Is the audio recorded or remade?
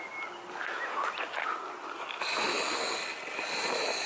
recorded